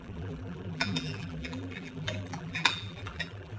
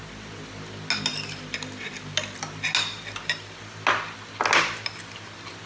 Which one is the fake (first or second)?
first